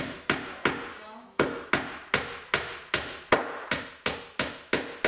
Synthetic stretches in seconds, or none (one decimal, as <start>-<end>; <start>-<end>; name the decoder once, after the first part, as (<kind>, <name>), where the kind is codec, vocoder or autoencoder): 0.9-1.7 (autoencoder, DAC-VAE)